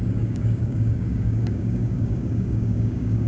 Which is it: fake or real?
fake